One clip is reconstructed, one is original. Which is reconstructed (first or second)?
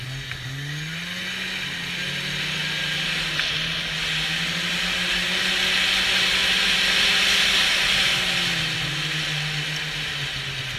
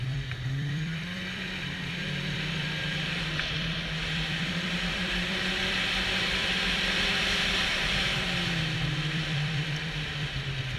second